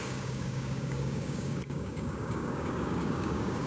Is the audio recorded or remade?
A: remade